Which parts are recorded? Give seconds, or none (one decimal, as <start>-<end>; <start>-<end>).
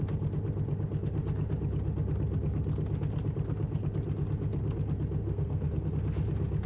0.0-5.2; 5.9-6.7